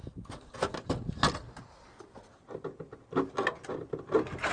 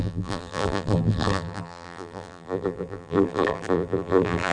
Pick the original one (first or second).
first